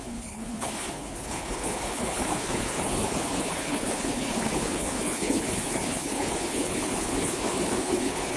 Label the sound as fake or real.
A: fake